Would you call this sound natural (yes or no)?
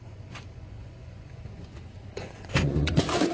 no